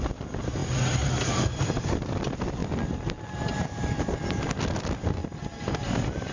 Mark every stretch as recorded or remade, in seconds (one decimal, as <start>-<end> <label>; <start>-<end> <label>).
0.0-0.6 remade; 0.6-1.6 recorded; 1.6-2.6 remade; 2.6-3.5 recorded; 3.5-5.2 remade; 5.2-5.8 recorded; 5.8-6.3 remade